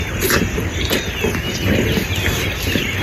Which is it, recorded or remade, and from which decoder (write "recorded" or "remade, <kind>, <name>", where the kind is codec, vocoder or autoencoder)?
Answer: recorded